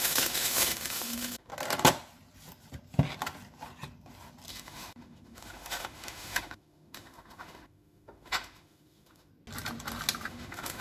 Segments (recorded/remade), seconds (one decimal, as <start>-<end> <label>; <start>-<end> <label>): 0.0-1.5 remade; 1.5-4.5 recorded; 4.5-9.3 remade; 9.3-10.3 recorded; 10.3-10.8 remade